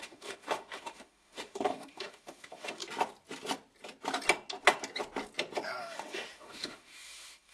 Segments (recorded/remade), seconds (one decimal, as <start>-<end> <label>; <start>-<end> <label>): 0.0-2.8 remade; 2.8-5.8 recorded; 5.8-7.5 remade